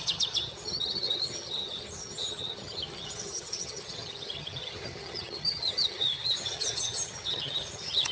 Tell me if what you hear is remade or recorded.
remade